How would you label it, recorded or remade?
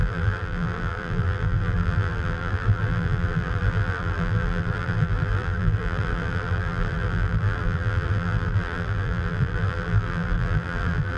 remade